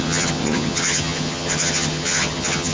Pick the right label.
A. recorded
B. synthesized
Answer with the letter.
B